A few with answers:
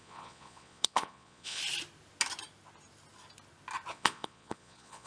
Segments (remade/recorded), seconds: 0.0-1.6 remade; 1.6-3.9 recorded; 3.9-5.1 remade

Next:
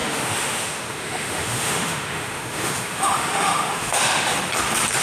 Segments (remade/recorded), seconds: 0.0-4.3 remade; 4.3-5.0 recorded

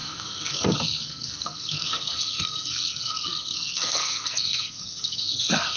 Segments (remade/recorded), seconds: 0.0-5.8 remade